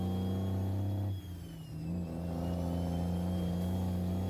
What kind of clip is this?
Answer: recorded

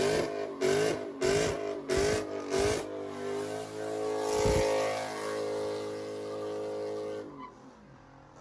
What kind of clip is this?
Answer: recorded